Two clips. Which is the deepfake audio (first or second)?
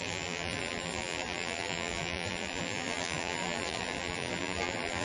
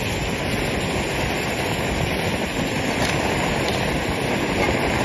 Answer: first